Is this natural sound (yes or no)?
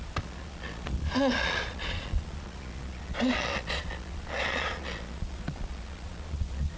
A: no